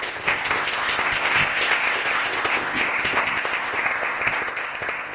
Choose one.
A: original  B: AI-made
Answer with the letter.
B